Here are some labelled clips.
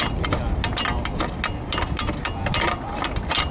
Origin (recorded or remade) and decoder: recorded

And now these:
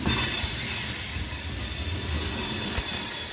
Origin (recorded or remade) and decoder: recorded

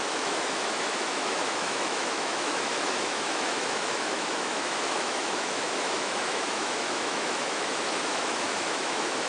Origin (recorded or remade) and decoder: remade, autoencoder, DAC-VAE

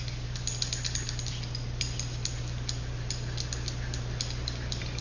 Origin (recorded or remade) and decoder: recorded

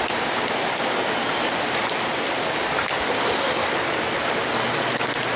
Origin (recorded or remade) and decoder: recorded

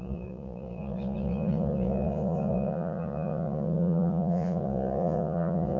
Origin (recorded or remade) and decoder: remade, vocoder, Vocos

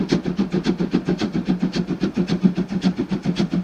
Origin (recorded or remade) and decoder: recorded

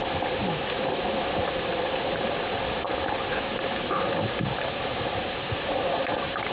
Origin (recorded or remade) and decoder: recorded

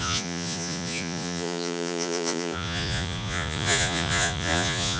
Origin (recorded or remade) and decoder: remade, vocoder, Vocos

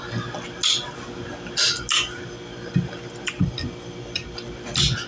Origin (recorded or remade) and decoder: recorded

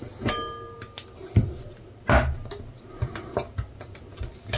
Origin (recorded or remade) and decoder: recorded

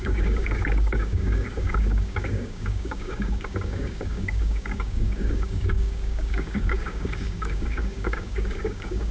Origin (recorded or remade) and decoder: remade, codec, DAC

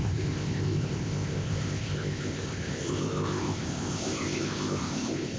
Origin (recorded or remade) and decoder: remade, codec, ZipCodec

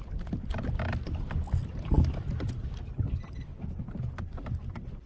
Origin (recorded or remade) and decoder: recorded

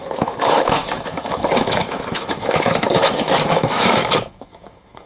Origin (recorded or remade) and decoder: remade, autoencoder, DAC-VAE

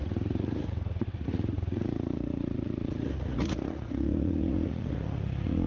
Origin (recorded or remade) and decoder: remade, vocoder, Vocos